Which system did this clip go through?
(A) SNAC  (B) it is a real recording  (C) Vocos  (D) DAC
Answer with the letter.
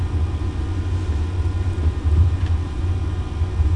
B